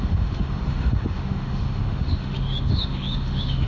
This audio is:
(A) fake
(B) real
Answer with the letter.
A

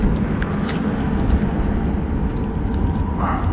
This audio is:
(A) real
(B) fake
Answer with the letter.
A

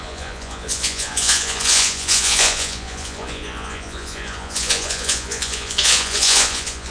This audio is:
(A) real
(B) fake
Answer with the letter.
B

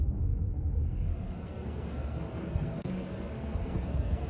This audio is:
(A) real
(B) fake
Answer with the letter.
B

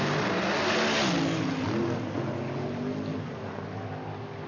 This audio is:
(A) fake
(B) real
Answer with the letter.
B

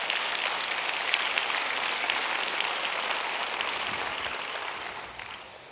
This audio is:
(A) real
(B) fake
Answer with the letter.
A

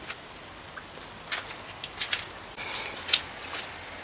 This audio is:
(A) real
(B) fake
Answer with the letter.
A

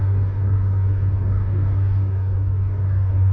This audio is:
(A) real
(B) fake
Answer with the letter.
B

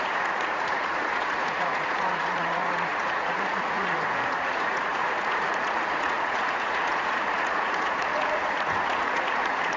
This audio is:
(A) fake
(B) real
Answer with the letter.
A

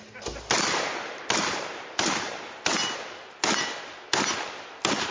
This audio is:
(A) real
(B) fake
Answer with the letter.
A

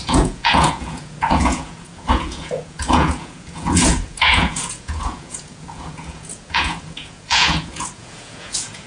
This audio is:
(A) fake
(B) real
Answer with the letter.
A